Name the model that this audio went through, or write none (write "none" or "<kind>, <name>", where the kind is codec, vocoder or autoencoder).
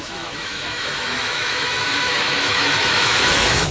autoencoder, DAC-VAE